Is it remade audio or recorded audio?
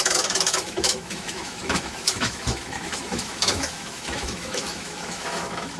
remade